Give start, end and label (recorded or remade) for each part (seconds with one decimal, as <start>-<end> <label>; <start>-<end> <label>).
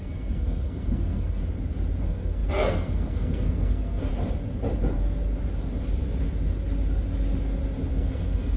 0.0-1.4 remade; 1.4-2.0 recorded; 2.0-4.1 remade; 4.1-7.9 recorded; 7.9-8.6 remade